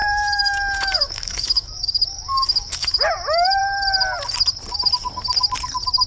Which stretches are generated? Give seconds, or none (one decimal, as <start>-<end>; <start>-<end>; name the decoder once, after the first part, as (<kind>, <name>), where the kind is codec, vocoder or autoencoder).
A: 0.0-3.6 (autoencoder, DAC-VAE)